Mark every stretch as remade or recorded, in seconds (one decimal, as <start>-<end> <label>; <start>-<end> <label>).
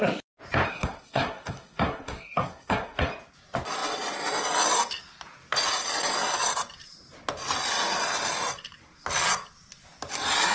0.0-0.7 recorded; 0.7-3.1 remade; 3.1-10.5 recorded